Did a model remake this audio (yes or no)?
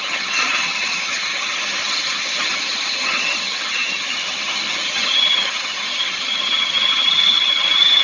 yes